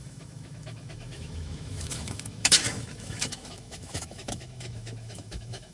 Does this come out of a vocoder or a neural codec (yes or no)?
yes